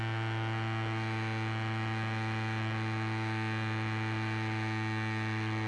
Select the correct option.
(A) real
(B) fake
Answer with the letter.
A